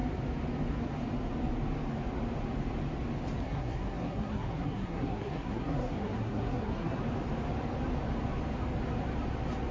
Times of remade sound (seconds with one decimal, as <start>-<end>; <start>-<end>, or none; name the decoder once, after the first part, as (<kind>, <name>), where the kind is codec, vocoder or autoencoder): 3.4-7.0 (codec, SNAC)